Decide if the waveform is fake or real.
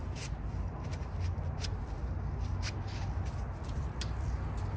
real